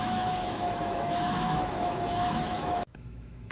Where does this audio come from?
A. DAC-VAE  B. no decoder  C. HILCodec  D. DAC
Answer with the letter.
A